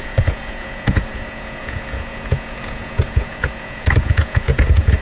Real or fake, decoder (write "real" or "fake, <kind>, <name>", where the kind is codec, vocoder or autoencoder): fake, vocoder, Vocos